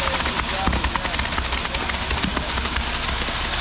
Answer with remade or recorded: recorded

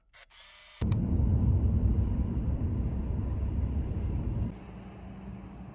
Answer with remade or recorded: recorded